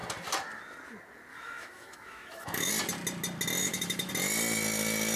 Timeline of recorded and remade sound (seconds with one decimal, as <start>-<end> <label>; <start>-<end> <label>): 0.0-1.3 recorded; 1.3-2.7 remade; 2.7-3.6 recorded; 3.6-4.1 remade; 4.1-5.2 recorded

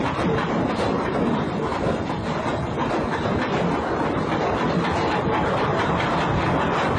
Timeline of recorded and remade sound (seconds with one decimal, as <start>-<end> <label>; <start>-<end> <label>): 0.0-1.7 remade; 1.7-2.7 recorded; 2.7-7.0 remade

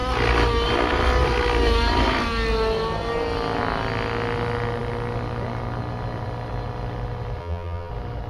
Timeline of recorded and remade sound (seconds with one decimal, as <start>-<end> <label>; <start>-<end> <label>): 0.0-7.4 recorded; 7.4-7.9 remade; 7.9-8.3 recorded

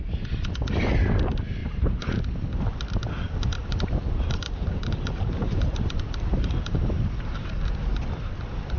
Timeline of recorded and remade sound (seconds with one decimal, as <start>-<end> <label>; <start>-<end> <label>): 0.0-1.6 recorded; 1.6-2.2 remade; 2.2-3.6 recorded; 3.6-7.5 remade; 7.5-8.8 recorded

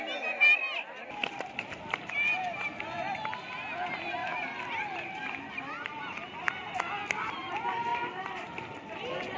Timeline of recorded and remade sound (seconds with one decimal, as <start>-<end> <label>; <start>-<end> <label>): 0.0-4.2 recorded; 4.2-5.5 remade; 5.5-7.9 recorded; 7.9-8.9 remade; 8.9-9.4 recorded

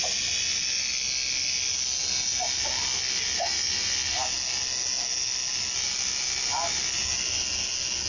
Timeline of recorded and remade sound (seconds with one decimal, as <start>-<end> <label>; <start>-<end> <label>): 0.0-8.1 recorded

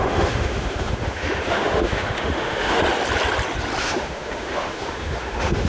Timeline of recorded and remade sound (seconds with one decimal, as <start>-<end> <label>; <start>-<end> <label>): 0.0-2.8 remade; 2.8-3.8 recorded; 3.8-5.7 remade